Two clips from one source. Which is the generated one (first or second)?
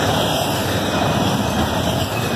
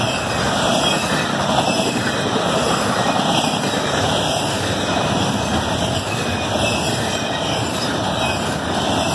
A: second